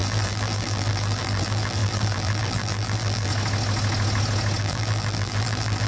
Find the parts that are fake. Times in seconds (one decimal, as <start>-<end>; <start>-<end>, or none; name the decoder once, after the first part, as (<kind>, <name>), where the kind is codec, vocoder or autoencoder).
0.0-3.3 (vocoder, BigVGAN v2); 4.6-5.9